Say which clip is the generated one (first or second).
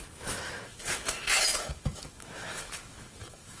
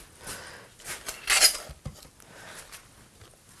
first